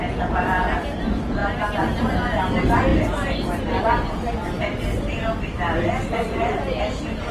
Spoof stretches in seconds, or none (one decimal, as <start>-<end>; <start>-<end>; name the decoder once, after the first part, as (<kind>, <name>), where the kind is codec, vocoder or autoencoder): none